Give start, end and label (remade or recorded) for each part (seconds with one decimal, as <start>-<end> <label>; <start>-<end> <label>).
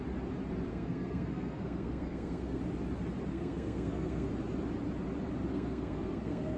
0.0-0.7 recorded; 0.7-2.6 remade; 2.6-3.3 recorded; 3.3-4.3 remade; 4.3-5.5 recorded; 5.5-6.6 remade